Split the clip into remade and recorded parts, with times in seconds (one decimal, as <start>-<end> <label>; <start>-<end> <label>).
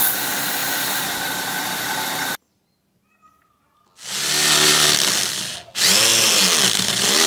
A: 0.0-0.6 recorded; 0.6-1.9 remade; 1.9-7.3 recorded